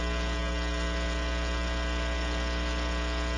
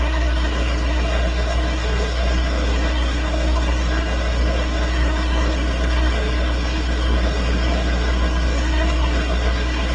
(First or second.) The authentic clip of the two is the first